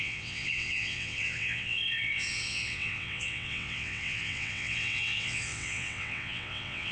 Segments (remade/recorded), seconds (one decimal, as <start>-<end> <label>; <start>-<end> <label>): 0.0-6.9 remade

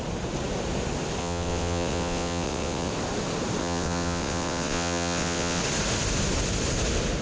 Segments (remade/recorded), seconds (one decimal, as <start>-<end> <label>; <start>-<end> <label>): 0.0-1.2 recorded; 1.2-2.9 remade; 2.9-3.6 recorded; 3.6-5.6 remade; 5.6-7.2 recorded